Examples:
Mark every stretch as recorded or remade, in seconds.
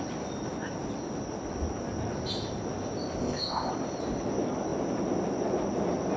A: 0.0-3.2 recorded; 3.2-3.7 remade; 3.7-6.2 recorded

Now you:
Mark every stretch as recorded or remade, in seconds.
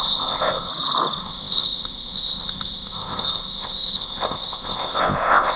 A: 0.0-0.7 remade; 0.7-1.2 recorded; 1.2-5.6 remade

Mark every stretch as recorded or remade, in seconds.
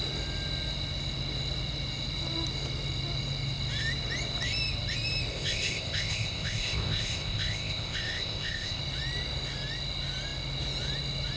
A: 0.0-5.3 recorded; 5.3-8.8 remade; 8.8-11.4 recorded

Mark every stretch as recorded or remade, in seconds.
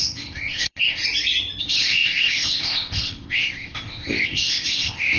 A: 0.0-1.0 remade; 1.0-1.6 recorded; 1.6-5.2 remade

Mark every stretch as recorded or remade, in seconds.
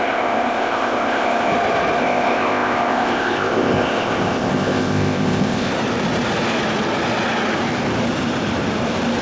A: 0.0-1.5 remade; 1.5-2.0 recorded; 2.0-5.7 remade; 5.7-9.2 recorded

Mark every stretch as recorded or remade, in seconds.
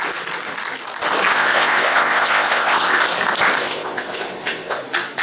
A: 0.0-1.3 recorded; 1.3-3.0 remade; 3.0-3.6 recorded; 3.6-4.8 remade; 4.8-5.2 recorded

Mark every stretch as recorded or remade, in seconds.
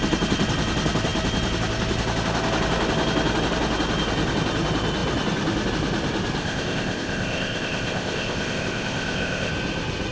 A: 0.0-6.4 recorded; 6.4-9.5 remade; 9.5-10.1 recorded